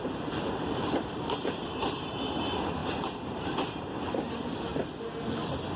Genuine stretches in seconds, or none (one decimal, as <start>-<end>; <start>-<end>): 4.7-5.8